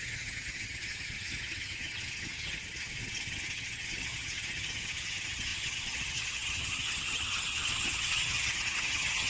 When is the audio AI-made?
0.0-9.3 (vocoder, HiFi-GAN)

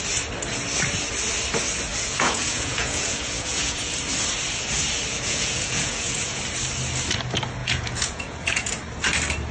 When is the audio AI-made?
1.9-3.9 (vocoder, Vocos); 5.1-6.4; 7.6-8.7

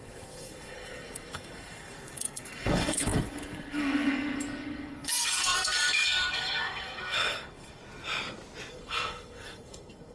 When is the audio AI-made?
0.0-7.8 (codec, SNAC); 8.7-10.1